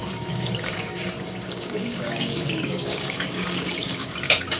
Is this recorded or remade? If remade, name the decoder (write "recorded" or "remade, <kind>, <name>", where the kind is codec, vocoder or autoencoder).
remade, codec, DAC